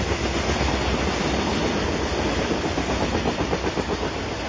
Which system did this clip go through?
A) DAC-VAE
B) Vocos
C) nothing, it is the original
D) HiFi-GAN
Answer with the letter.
C